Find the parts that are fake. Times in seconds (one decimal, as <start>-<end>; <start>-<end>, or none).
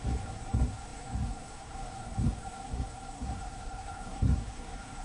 0.0-5.0